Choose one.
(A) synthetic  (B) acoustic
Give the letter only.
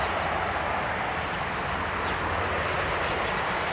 B